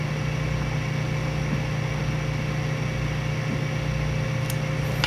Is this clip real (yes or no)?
yes